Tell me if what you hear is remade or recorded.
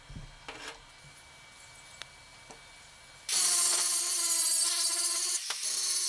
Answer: recorded